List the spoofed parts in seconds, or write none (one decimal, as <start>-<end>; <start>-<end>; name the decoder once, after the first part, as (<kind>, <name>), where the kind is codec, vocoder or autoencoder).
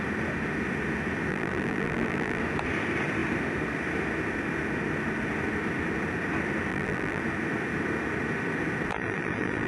1.3-2.4 (vocoder, BigVGAN v2); 6.7-7.2; 8.9-9.7